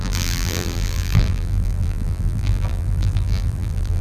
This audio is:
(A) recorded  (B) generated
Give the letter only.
B